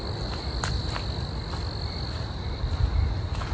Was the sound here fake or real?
real